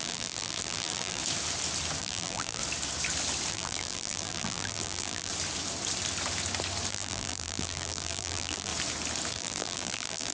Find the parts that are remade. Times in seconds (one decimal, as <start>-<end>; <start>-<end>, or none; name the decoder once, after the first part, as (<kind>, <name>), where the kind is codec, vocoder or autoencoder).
0.0-1.2 (vocoder, BigVGAN v2); 2.0-2.6; 3.5-5.3; 6.9-8.7; 9.3-10.3